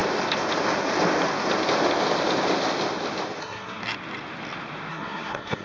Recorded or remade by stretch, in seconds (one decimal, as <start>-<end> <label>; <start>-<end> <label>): 0.0-3.4 recorded; 3.4-3.8 remade; 3.8-4.9 recorded; 4.9-5.6 remade